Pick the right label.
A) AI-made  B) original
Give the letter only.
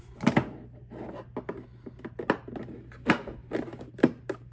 B